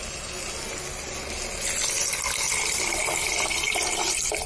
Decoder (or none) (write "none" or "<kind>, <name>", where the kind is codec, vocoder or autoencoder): none